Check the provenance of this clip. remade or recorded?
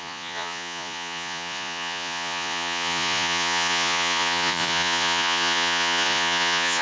remade